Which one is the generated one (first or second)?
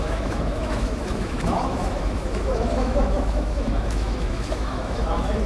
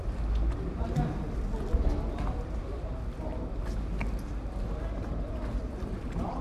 first